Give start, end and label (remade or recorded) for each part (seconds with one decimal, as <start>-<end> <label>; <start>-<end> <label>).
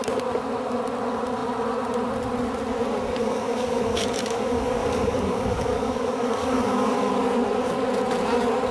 0.0-3.2 recorded; 3.2-7.1 remade; 7.1-8.7 recorded